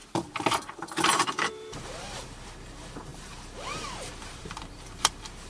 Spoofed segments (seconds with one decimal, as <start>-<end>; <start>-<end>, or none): 0.0-5.5